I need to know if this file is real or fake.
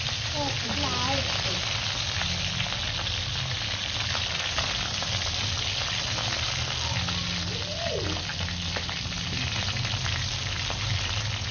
real